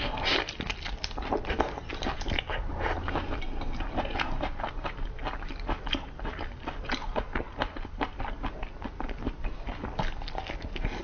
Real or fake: real